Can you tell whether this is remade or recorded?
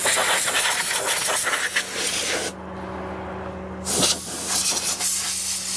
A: recorded